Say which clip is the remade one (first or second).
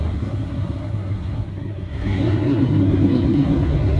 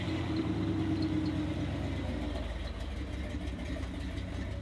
first